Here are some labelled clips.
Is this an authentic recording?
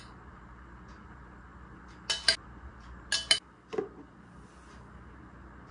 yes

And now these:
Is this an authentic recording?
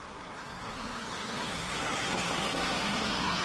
no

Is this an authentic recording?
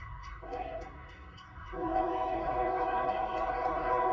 no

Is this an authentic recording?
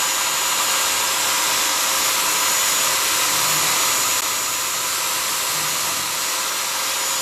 yes